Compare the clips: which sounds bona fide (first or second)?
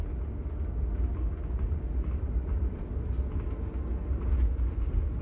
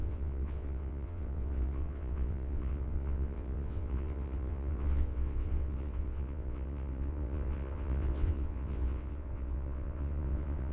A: first